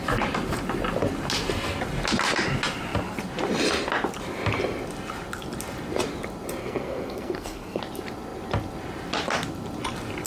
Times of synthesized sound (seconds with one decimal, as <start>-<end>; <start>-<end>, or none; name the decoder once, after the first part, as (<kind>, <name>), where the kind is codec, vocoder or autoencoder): 6.6-7.8 (codec, SNAC)